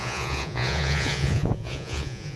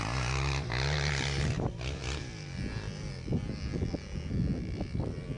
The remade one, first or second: first